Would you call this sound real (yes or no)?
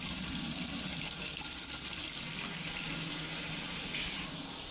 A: yes